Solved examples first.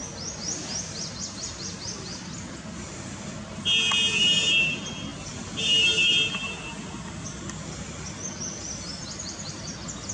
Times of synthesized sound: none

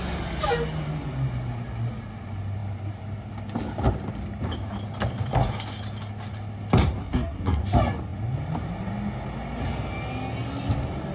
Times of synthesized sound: 7.0-7.6 (codec, SNAC)

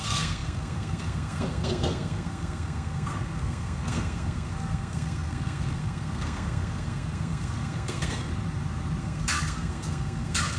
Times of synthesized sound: 0.0-8.3 (codec, SNAC); 9.0-10.6

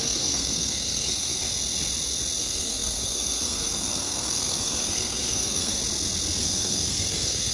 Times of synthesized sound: 0.0-1.4 (codec, SNAC); 2.4-5.8; 6.4-7.5

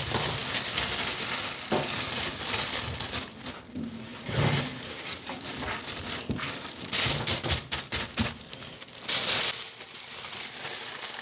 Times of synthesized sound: none

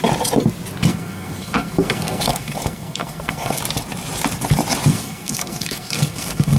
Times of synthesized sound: 0.9-3.6 (codec, SNAC); 4.9-6.6

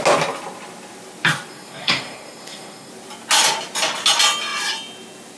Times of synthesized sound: 1.5-2.9 (codec, SNAC)